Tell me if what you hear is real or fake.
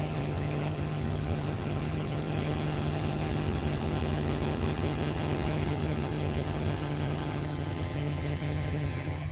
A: fake